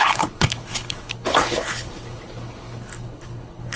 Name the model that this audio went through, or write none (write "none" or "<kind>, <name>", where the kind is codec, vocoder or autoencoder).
codec, HILCodec